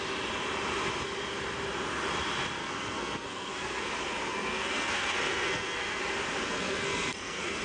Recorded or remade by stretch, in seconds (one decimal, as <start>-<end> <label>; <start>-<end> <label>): 0.0-2.6 recorded; 2.6-3.9 remade; 3.9-4.3 recorded; 4.3-6.0 remade; 6.0-6.5 recorded; 6.5-7.6 remade